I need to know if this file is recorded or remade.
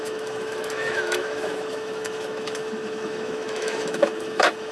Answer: remade